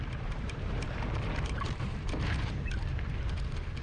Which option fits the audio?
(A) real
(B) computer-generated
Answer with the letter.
B